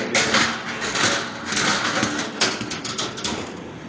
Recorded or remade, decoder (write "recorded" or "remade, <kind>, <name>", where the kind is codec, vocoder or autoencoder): recorded